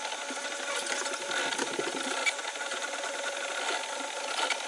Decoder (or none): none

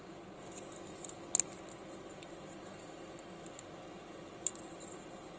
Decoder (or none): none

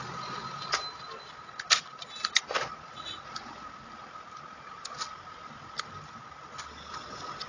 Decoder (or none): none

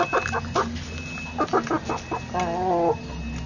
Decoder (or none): none